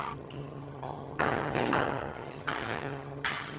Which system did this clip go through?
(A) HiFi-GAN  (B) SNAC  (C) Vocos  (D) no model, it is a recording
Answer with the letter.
A